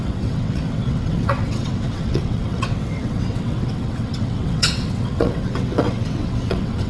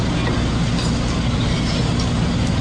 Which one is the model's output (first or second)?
first